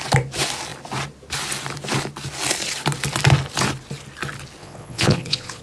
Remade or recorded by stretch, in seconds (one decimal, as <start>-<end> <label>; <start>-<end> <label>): 0.0-4.6 recorded; 4.6-5.6 remade